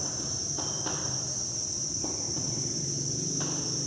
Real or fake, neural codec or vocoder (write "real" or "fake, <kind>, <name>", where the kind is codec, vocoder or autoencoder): real